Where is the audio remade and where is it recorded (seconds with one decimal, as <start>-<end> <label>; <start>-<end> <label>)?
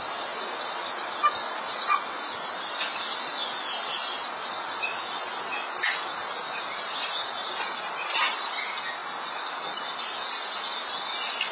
0.0-6.2 recorded; 6.2-8.5 remade; 8.5-11.5 recorded